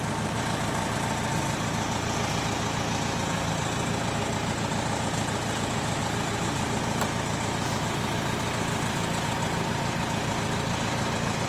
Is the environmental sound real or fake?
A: real